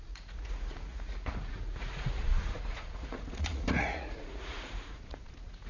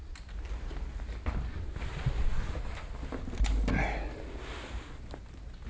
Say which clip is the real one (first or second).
second